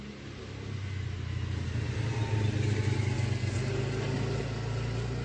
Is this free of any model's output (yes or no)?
yes